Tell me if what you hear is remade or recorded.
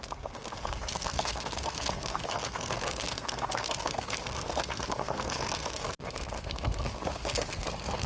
remade